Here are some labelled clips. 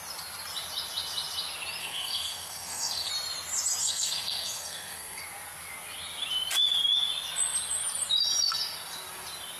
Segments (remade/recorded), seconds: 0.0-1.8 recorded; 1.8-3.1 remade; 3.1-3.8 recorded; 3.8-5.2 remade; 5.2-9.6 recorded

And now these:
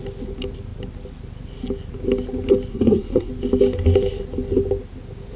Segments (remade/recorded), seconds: 0.0-2.7 recorded; 2.7-3.3 remade; 3.3-5.4 recorded